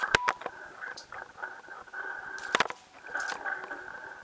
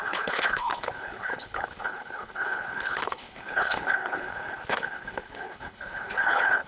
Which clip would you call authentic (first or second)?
first